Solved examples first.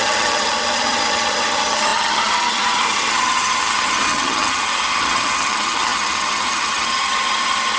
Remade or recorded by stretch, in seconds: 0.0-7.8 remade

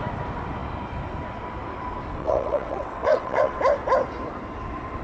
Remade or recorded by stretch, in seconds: 0.0-2.2 recorded; 2.2-3.6 remade; 3.6-5.0 recorded